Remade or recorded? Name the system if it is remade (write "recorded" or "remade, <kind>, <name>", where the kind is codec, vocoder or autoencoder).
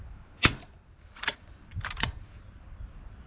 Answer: remade, vocoder, BigVGAN v2